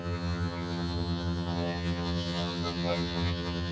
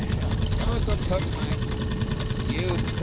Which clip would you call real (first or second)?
second